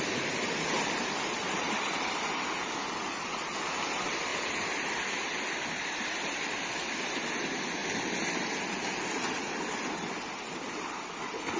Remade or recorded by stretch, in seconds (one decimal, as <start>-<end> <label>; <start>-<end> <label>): 0.0-11.6 recorded